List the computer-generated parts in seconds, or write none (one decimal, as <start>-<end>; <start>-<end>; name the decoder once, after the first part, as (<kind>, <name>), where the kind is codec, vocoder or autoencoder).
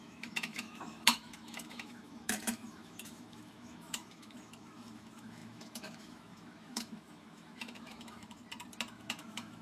0.0-8.4 (autoencoder, DAC-VAE); 8.9-9.6